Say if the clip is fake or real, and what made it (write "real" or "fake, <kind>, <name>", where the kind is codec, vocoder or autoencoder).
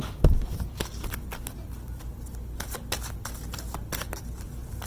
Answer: real